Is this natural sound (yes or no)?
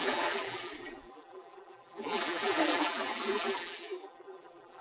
no